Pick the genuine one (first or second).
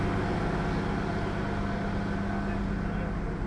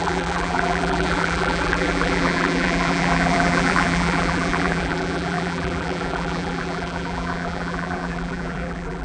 first